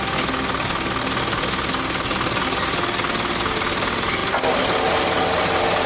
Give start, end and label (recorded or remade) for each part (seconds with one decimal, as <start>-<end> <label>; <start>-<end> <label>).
0.0-5.9 recorded